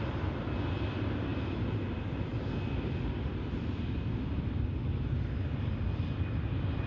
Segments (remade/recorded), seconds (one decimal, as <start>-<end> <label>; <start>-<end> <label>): 0.0-6.9 recorded